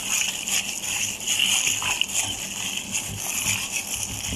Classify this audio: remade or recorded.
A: recorded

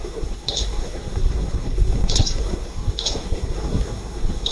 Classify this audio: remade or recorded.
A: remade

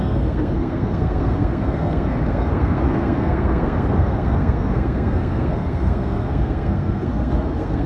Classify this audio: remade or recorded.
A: remade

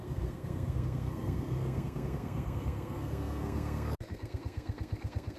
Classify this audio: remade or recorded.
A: remade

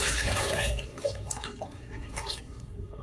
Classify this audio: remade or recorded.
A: remade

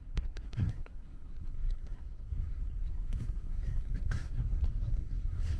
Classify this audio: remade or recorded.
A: remade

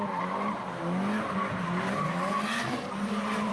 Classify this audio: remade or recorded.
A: recorded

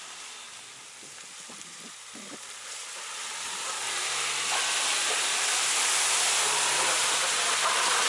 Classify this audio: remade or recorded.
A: recorded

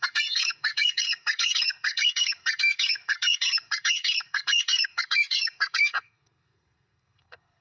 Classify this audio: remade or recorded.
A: remade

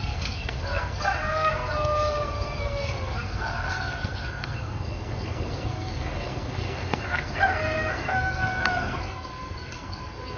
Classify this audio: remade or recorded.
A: remade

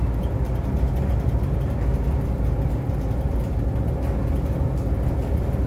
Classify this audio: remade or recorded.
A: recorded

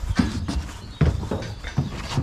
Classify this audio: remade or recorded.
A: recorded